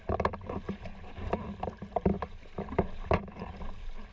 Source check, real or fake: fake